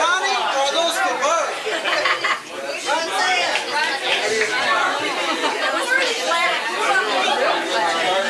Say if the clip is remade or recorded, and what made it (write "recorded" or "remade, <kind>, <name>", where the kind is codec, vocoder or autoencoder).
recorded